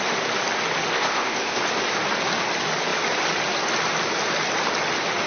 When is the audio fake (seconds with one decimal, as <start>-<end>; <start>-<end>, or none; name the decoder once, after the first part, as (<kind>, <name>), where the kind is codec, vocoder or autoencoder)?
0.9-1.6 (codec, ZipCodec)